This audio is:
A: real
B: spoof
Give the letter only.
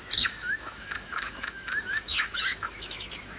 B